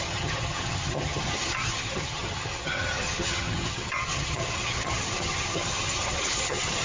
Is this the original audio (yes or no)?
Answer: no